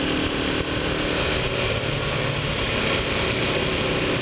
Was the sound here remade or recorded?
recorded